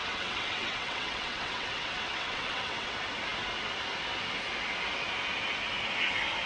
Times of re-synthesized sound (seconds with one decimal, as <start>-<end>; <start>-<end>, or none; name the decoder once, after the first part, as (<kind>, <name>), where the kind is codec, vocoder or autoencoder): 0.0-2.9 (vocoder, WaveNeXt)